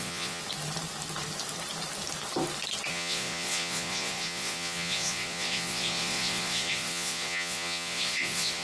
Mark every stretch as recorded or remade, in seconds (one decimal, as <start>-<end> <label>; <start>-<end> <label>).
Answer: 0.0-0.4 remade; 0.4-2.9 recorded; 2.9-8.6 remade